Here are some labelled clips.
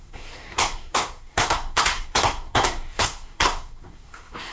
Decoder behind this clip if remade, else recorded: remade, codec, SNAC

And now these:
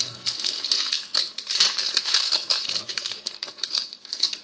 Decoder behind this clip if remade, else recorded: remade, codec, SNAC